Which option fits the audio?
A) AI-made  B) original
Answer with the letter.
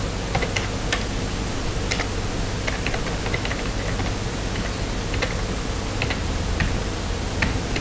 B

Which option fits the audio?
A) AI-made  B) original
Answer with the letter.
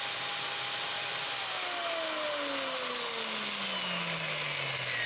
B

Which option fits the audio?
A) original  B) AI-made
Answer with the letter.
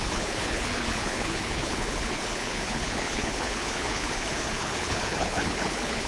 B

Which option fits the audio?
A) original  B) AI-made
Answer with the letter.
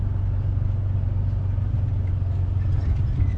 A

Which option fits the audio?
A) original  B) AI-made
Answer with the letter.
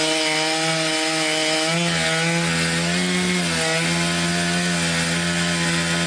A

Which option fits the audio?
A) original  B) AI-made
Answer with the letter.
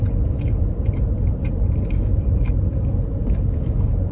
B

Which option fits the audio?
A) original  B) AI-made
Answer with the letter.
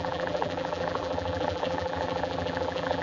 B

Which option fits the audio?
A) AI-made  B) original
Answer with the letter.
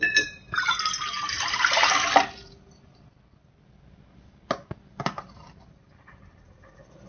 B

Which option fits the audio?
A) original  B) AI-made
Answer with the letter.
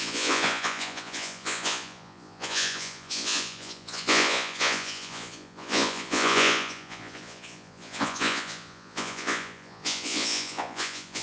B